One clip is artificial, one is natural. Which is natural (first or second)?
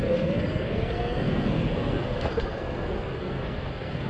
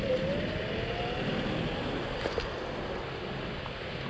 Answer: second